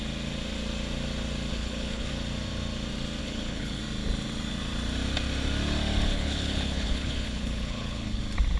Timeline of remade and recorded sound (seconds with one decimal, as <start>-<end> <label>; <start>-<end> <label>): 0.0-1.5 recorded; 1.5-2.1 remade; 2.1-3.2 recorded; 3.2-3.8 remade; 3.8-6.1 recorded; 6.1-8.2 remade; 8.2-8.6 recorded